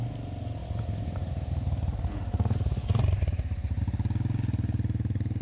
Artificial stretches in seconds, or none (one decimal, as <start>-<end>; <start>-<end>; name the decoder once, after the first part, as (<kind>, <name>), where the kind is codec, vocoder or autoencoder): 0.6-3.8 (vocoder, BigVGAN v2)